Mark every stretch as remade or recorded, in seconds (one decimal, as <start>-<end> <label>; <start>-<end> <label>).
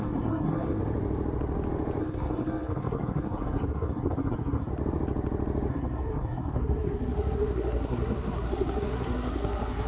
0.0-0.8 remade; 0.8-2.0 recorded; 2.0-4.7 remade; 4.7-5.7 recorded; 5.7-9.9 remade